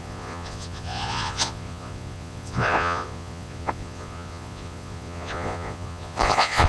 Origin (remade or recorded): remade